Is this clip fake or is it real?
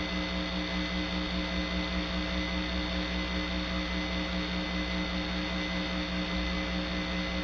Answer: real